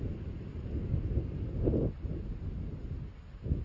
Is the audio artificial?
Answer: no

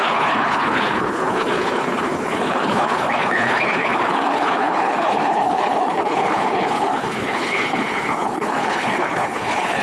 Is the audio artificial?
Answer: yes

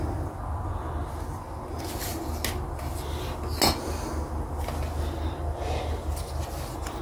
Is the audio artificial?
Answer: no